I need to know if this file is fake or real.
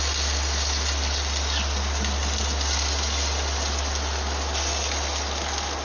real